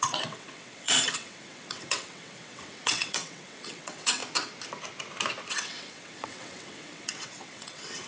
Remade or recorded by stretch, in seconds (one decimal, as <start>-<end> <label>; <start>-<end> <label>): 0.0-4.2 remade; 4.2-5.5 recorded; 5.5-8.1 remade